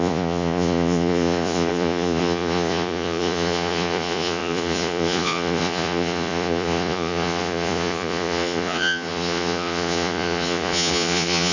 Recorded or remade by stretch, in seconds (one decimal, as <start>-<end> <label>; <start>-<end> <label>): 0.0-11.5 remade